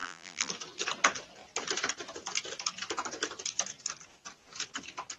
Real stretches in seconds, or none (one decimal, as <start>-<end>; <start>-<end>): 0.5-5.2